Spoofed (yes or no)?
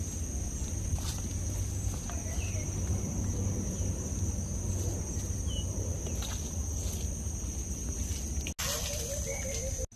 no